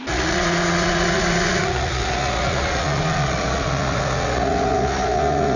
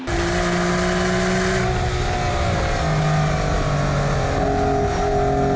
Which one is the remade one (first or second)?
first